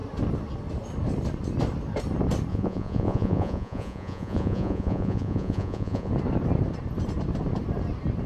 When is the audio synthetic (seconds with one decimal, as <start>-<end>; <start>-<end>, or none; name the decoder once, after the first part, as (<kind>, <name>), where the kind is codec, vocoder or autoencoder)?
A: 2.5-6.1 (vocoder, Vocos)